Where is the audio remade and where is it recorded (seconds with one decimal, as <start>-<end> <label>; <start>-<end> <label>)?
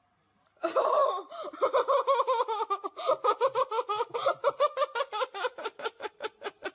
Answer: 0.0-6.7 recorded